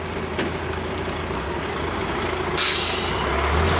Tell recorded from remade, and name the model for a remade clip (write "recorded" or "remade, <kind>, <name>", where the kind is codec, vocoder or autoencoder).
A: recorded